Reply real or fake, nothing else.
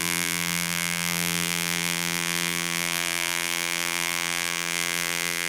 fake